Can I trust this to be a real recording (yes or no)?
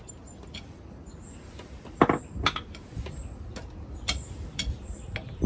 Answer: yes